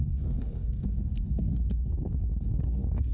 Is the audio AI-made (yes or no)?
yes